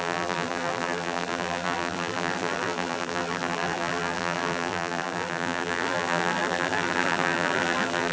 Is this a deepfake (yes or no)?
yes